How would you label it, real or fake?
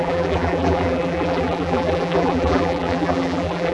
fake